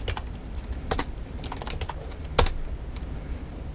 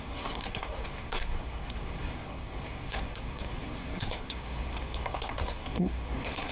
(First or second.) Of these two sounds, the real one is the first